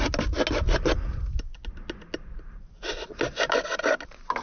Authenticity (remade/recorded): recorded